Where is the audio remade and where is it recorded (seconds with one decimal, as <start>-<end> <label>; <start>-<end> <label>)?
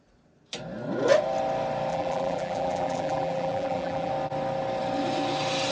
0.0-1.9 recorded; 1.9-4.1 remade; 4.1-5.7 recorded